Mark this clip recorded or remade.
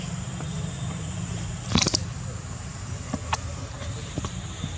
recorded